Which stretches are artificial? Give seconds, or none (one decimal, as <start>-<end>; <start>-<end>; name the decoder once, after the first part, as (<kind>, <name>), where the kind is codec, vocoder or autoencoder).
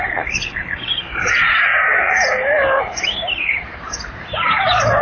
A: 0.0-1.7 (vocoder, BigVGAN v2); 2.8-5.0